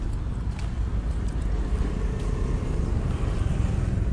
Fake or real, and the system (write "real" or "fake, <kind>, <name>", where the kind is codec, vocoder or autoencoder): real